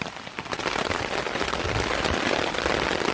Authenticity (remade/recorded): recorded